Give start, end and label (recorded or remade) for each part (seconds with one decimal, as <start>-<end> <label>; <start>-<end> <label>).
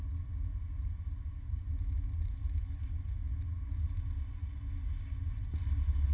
0.0-6.1 recorded